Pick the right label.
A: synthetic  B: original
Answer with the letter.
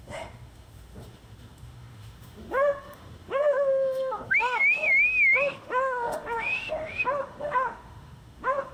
A